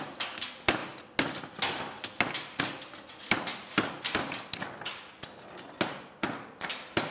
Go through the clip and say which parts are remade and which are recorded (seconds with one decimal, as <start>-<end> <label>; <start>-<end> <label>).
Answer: 0.0-7.1 recorded